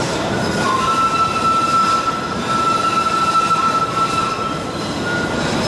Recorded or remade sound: recorded